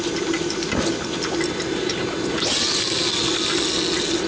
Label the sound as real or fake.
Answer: real